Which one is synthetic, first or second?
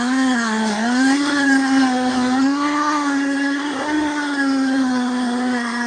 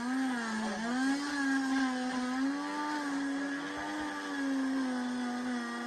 first